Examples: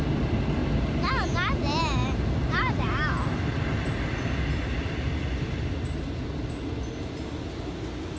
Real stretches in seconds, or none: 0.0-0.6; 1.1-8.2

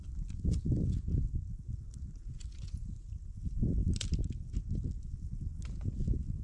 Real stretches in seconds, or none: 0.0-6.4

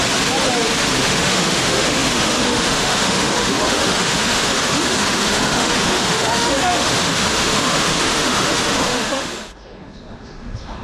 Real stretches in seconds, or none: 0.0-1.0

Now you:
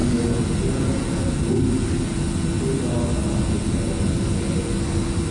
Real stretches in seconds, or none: 0.0-5.3